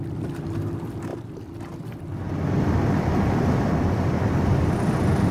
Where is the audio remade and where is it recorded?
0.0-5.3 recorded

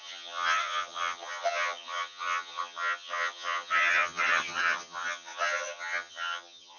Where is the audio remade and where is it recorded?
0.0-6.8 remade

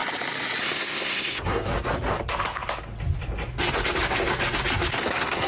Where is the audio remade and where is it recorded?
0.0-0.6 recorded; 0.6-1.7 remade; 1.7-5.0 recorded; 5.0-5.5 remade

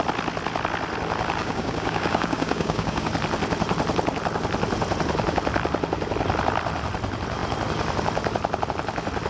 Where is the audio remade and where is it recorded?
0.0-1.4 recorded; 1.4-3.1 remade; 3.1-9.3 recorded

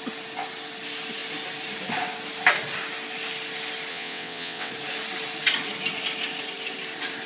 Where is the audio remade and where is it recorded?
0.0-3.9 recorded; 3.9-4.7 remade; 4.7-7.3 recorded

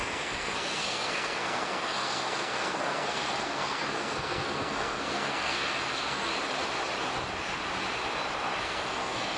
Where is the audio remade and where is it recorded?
0.0-6.3 remade; 6.3-8.6 recorded; 8.6-9.4 remade

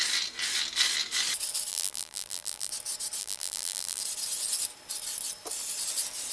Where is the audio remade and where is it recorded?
0.0-1.7 recorded; 1.7-2.7 remade; 2.7-3.2 recorded; 3.2-4.0 remade; 4.0-6.3 recorded

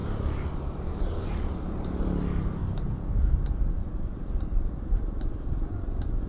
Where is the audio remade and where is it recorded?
0.0-2.6 recorded; 2.6-3.1 remade; 3.1-3.8 recorded; 3.8-5.3 remade; 5.3-6.3 recorded